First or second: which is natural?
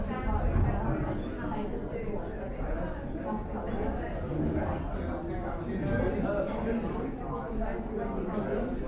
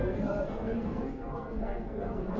first